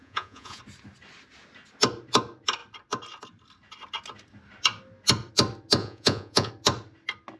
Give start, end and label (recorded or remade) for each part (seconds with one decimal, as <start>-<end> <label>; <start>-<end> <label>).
0.0-0.6 remade; 0.6-5.8 recorded; 5.8-6.5 remade; 6.5-7.4 recorded

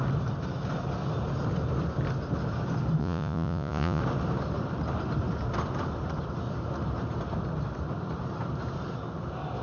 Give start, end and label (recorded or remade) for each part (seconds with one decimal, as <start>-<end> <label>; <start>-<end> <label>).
0.0-3.0 recorded; 3.0-4.0 remade; 4.0-9.6 recorded